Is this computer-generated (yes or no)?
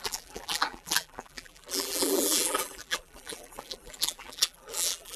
yes